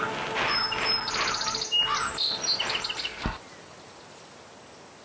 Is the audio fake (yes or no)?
no